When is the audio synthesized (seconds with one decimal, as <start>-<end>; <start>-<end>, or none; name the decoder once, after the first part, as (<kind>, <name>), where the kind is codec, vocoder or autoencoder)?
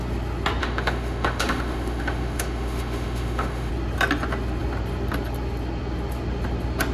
0.6-3.7 (autoencoder, DAC-VAE)